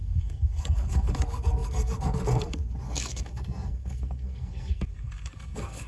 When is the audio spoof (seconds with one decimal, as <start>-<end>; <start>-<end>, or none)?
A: 0.0-5.9